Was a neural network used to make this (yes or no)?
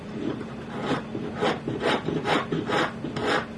no